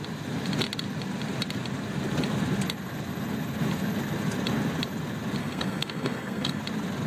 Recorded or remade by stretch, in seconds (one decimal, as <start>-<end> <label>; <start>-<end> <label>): 0.0-5.4 recorded; 5.4-6.6 remade; 6.6-7.1 recorded